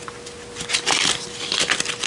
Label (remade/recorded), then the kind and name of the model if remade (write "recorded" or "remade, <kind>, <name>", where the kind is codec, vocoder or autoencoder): recorded